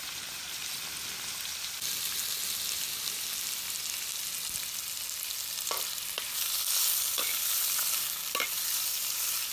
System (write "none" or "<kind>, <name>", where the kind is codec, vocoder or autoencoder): none